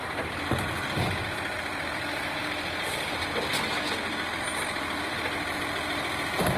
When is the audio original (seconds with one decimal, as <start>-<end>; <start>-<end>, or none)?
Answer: 2.4-6.6